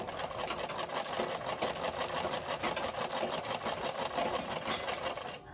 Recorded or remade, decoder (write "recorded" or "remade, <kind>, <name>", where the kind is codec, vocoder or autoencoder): recorded